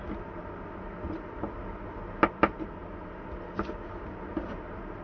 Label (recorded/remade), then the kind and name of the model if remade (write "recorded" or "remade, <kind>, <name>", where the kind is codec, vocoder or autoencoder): recorded